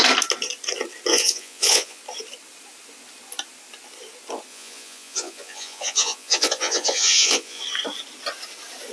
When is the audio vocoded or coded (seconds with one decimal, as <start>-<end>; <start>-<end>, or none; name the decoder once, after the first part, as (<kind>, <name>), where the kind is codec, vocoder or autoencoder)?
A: 1.1-2.0 (vocoder, Vocos); 4.5-7.6